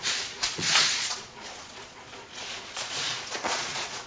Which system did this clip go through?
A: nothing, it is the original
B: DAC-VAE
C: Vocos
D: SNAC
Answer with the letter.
C